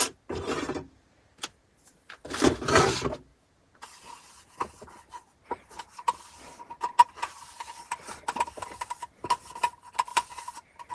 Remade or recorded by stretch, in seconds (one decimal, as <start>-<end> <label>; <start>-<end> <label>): 0.0-3.3 recorded; 3.3-5.1 remade; 5.1-7.1 recorded; 7.1-7.8 remade; 7.8-10.9 recorded

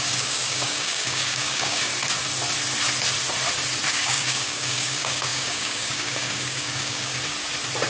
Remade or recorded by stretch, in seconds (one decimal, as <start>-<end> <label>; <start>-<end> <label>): 0.0-1.9 remade; 1.9-3.9 recorded; 3.9-7.1 remade; 7.1-7.9 recorded

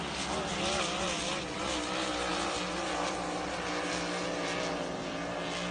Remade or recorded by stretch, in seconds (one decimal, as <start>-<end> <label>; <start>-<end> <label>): 0.0-5.7 recorded

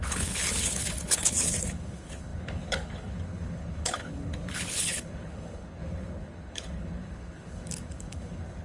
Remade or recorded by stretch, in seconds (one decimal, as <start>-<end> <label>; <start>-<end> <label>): 0.0-8.6 remade

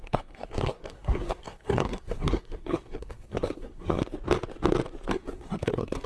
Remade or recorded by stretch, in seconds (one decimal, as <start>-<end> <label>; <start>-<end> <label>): 0.0-4.0 remade; 4.0-5.1 recorded; 5.1-6.1 remade

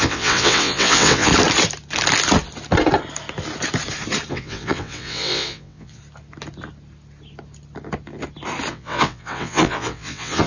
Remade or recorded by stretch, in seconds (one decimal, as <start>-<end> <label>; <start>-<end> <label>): 0.0-1.3 remade; 1.3-4.3 recorded; 4.3-6.0 remade; 6.0-8.7 recorded; 8.7-10.5 remade

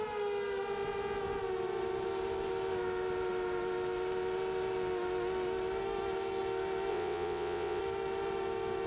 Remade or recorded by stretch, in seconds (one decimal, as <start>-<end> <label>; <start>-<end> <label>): 0.0-6.9 recorded; 6.9-7.8 remade; 7.8-8.9 recorded